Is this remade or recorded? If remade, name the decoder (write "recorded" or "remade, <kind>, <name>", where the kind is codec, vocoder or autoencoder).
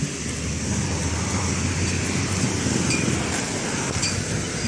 recorded